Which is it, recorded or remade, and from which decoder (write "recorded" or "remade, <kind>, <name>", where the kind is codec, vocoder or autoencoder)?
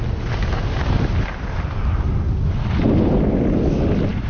recorded